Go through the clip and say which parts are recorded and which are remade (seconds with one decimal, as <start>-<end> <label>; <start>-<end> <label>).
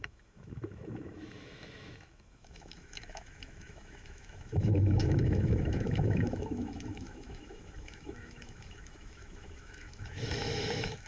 0.0-11.1 remade